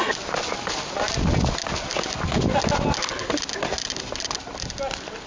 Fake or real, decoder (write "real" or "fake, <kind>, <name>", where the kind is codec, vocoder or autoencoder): real